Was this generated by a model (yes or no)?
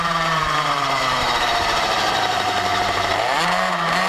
yes